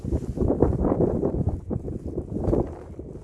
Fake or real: real